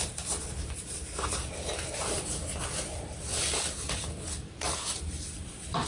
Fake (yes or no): yes